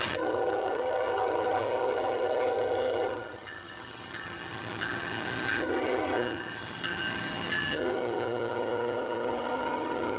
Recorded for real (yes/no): no